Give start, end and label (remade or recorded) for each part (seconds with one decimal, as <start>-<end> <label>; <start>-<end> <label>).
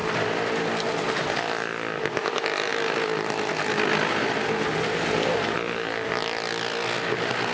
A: 0.0-7.5 recorded